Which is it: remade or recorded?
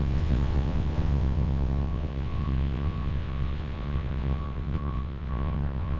remade